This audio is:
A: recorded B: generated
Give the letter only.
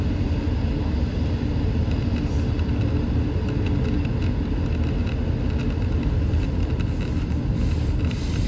A